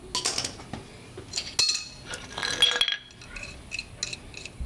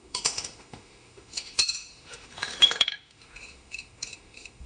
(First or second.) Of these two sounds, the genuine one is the first